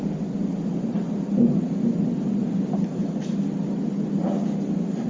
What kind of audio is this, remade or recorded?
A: recorded